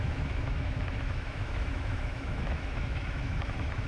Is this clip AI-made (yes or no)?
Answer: yes